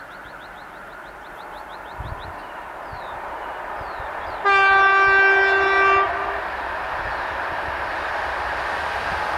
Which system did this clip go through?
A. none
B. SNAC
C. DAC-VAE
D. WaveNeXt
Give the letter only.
A